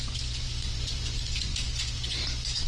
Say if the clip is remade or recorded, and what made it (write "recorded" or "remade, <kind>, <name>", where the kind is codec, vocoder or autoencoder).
remade, vocoder, Vocos